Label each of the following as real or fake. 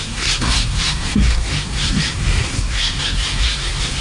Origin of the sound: fake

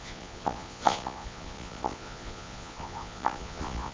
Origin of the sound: fake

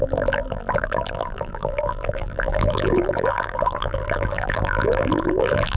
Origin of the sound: fake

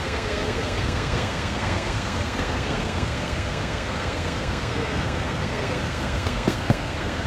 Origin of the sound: fake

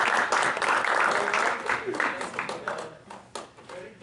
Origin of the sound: real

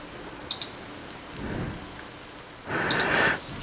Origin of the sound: real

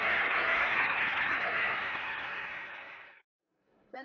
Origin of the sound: fake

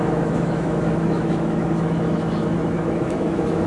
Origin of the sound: fake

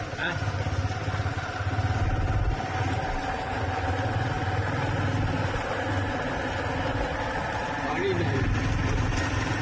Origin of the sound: real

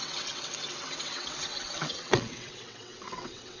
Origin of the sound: fake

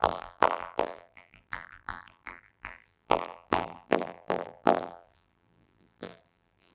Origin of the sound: fake